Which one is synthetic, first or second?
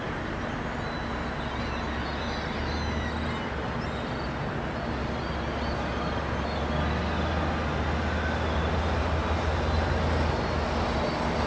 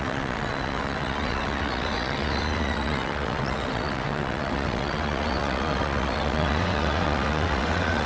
second